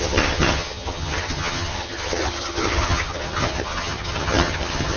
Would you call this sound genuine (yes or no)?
no